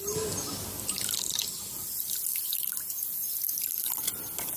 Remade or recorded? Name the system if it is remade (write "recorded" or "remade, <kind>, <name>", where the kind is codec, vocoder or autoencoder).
recorded